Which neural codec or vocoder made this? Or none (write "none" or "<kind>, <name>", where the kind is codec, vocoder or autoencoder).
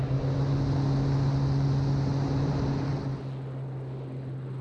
none